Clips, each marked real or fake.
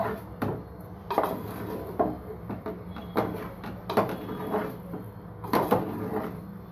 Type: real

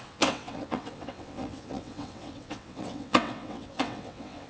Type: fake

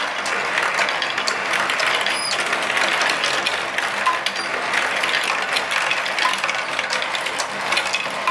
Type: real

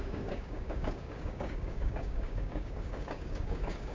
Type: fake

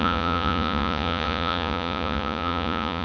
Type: fake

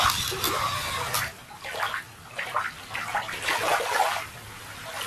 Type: real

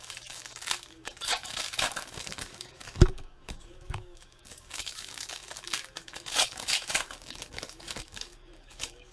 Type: fake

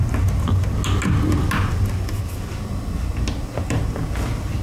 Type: real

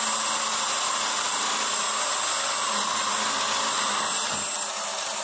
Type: real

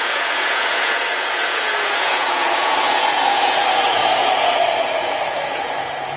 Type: fake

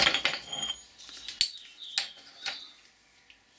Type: real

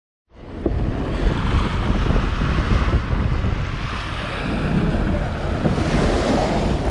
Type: real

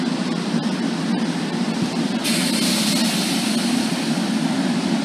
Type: real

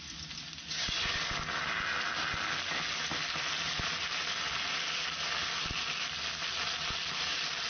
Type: real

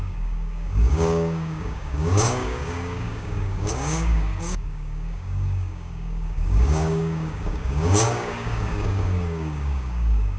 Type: fake